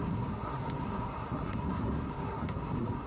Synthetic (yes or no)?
yes